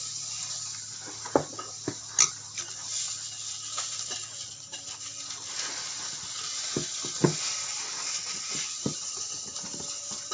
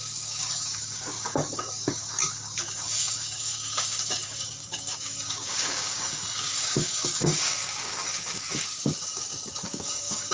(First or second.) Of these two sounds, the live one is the first